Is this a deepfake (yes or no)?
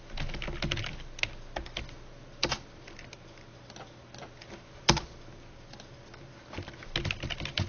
no